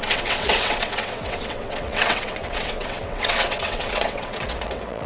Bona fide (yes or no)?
no